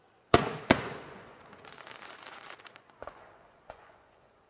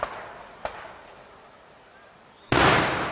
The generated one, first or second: first